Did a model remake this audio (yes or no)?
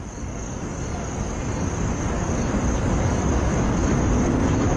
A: no